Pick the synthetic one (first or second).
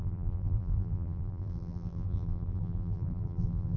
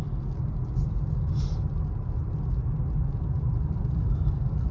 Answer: first